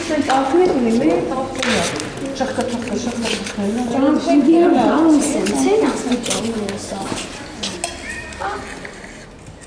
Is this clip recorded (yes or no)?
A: yes